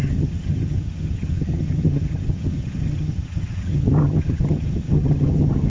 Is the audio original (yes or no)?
no